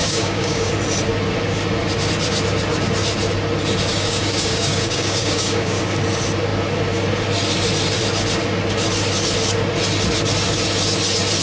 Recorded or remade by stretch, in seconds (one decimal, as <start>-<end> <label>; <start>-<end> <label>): 0.0-0.7 remade; 0.7-3.9 recorded; 3.9-5.8 remade; 5.8-11.4 recorded